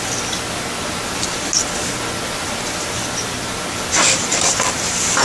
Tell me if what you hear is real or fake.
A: real